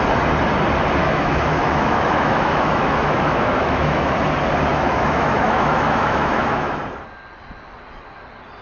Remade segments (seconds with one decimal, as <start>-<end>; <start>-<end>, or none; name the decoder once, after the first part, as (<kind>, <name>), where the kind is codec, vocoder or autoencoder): 1.0-4.1 (autoencoder, DAC-VAE); 4.7-6.8